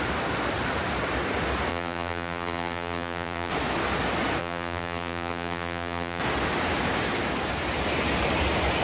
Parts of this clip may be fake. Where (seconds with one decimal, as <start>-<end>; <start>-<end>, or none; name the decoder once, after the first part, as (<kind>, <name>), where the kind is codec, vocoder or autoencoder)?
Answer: 1.7-3.5 (vocoder, BigVGAN v2); 4.4-6.2